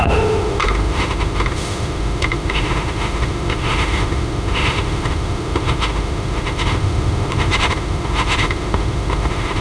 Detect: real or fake fake